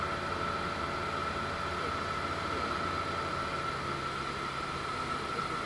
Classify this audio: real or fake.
real